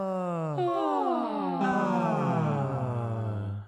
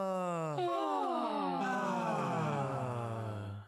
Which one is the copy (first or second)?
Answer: second